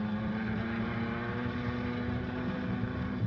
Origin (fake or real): real